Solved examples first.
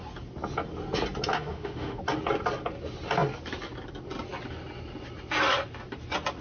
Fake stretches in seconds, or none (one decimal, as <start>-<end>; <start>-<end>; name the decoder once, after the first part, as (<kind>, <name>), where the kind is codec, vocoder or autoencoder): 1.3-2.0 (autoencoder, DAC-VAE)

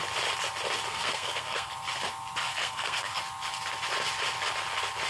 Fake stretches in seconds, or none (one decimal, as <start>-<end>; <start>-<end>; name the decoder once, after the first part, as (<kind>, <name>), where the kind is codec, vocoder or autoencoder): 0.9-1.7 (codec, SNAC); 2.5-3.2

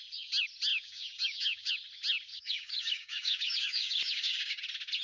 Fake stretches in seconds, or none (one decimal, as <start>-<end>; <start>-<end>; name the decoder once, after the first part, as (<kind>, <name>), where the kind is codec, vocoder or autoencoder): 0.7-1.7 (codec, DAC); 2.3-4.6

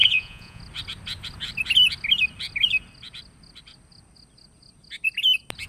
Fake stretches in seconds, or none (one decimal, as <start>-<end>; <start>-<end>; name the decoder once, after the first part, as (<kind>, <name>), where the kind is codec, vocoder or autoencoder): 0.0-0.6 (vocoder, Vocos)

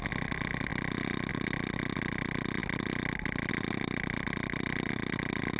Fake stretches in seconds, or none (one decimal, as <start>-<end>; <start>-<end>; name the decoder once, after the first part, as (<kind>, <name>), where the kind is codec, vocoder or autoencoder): none

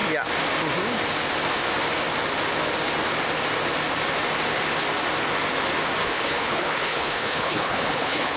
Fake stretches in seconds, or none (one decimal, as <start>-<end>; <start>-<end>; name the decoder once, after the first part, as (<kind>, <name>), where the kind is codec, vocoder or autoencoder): 6.0-8.4 (codec, HILCodec)

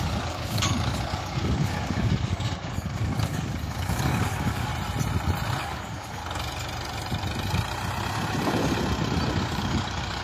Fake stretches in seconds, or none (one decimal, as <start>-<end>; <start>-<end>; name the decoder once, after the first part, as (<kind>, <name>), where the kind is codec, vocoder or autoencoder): 0.0-4.7 (codec, DAC); 5.6-6.2; 9.4-10.2